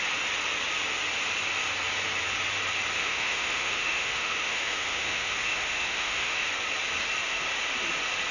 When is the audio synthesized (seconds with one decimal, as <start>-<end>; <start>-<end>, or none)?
3.0-6.5